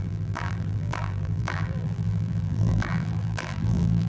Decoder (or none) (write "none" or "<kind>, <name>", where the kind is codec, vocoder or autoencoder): vocoder, BigVGAN v2